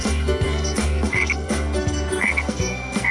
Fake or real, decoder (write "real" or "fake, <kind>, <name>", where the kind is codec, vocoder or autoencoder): fake, codec, SNAC